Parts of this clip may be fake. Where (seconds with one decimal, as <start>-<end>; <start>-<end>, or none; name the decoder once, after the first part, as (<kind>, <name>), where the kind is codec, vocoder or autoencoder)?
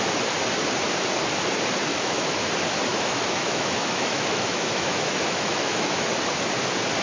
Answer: 1.9-2.5 (autoencoder, DAC-VAE); 2.9-6.1